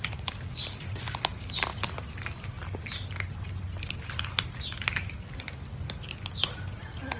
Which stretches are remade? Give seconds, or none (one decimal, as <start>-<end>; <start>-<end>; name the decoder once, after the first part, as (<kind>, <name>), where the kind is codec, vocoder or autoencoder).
none